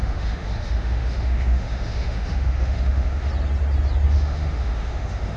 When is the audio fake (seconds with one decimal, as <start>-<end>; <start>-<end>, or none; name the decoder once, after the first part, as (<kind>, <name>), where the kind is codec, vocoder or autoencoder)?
0.0-3.3 (autoencoder, DAC-VAE); 4.1-5.4